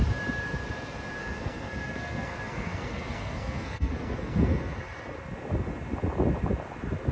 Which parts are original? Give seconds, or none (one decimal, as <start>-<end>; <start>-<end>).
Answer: 0.0-1.2; 4.8-7.1